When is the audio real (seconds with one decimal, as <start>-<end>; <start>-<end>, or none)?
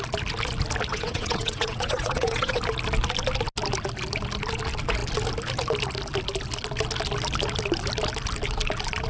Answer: 0.0-0.9; 2.6-9.1